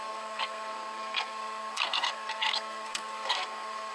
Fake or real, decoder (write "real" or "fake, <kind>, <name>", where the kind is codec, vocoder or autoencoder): fake, codec, SNAC